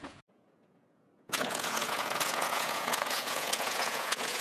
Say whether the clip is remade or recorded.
remade